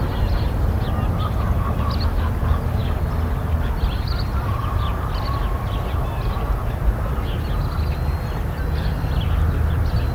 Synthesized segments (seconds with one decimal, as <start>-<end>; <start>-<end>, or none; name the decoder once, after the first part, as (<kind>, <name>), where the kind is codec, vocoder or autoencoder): none